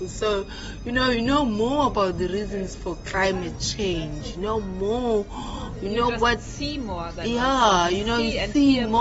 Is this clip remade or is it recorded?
recorded